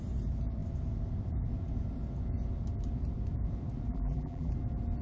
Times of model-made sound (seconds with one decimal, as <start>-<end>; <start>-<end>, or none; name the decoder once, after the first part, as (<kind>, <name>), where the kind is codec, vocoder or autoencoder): 3.9-4.5 (vocoder, BigVGAN v2)